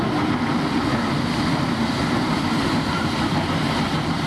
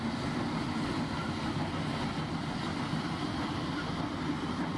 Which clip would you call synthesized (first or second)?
first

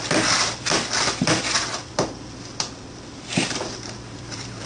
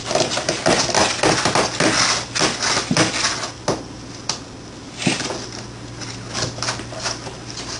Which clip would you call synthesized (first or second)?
first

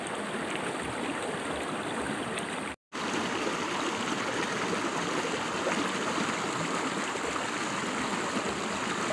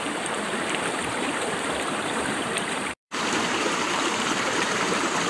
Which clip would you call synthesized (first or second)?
second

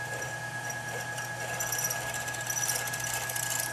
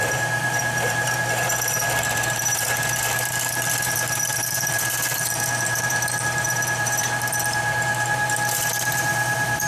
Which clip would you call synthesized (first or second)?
second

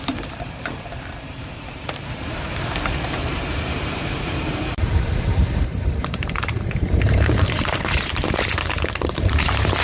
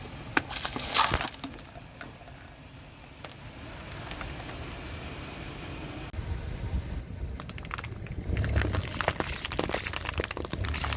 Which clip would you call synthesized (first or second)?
first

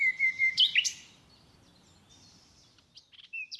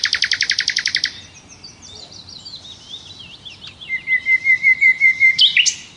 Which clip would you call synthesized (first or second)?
first